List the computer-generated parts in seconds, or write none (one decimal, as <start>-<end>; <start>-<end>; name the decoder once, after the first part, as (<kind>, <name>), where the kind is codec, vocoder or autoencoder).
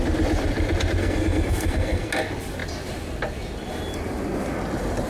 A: 1.0-2.1 (codec, SNAC)